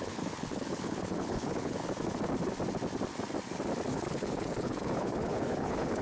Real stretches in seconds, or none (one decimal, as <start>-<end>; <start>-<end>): 1.8-3.9